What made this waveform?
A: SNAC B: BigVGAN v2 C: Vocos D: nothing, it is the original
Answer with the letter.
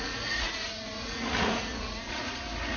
C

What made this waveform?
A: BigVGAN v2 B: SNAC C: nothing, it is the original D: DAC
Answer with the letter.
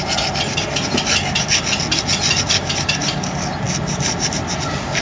C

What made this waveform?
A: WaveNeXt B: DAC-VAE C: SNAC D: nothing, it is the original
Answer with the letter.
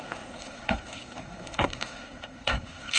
C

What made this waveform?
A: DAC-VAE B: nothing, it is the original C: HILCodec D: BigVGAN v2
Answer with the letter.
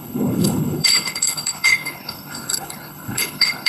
C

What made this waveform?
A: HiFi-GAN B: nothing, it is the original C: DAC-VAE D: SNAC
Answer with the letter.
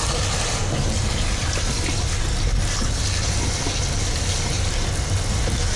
B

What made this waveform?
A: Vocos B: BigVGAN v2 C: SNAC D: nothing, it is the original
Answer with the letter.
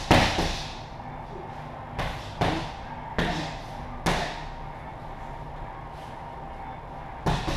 D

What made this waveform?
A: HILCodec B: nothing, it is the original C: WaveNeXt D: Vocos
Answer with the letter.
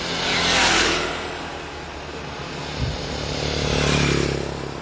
B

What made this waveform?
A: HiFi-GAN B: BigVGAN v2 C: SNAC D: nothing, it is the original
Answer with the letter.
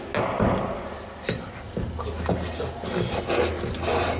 D